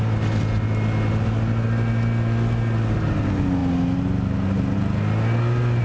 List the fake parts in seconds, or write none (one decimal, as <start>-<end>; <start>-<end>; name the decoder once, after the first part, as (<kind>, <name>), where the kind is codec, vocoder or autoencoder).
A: none